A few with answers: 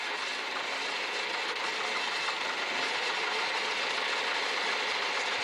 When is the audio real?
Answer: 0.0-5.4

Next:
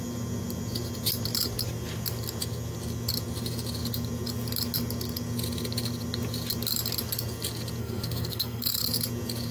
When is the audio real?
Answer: 0.0-7.8; 8.7-9.5

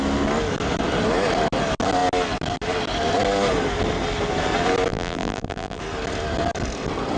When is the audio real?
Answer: 0.0-4.9; 5.8-7.2

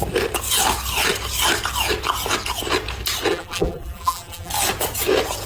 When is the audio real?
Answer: 0.0-3.3; 4.5-5.5

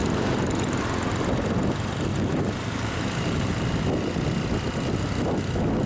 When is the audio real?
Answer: 0.8-2.1; 3.5-5.9

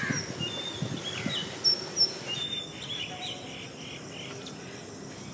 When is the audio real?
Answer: 0.0-5.3